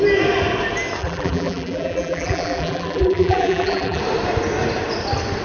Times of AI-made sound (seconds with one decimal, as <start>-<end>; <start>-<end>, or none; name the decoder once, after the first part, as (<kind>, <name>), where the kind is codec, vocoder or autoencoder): 1.0-4.0 (vocoder, BigVGAN v2)